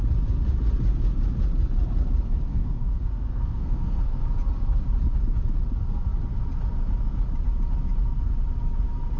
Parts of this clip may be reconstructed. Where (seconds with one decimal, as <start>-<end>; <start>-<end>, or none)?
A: 2.5-4.2